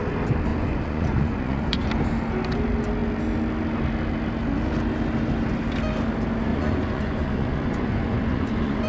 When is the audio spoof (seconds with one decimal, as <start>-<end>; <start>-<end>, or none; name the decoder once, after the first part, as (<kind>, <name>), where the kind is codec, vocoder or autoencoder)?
0.5-1.9 (vocoder, Vocos); 6.5-8.9